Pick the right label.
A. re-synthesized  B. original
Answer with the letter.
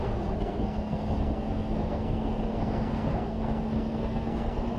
A